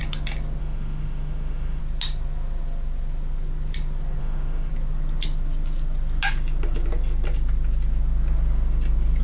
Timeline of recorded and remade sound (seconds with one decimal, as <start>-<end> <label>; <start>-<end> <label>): 0.0-0.6 recorded; 0.6-1.8 remade; 1.8-4.2 recorded; 4.2-4.7 remade; 4.7-9.2 recorded